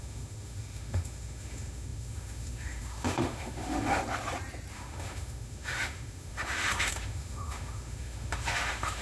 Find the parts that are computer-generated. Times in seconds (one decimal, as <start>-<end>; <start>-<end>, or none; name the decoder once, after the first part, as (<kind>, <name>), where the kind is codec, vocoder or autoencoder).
0.0-4.0 (autoencoder, DAC-VAE); 4.7-9.0